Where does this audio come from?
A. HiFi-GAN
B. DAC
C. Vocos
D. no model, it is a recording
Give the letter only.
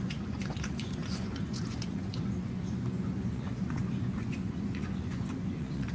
C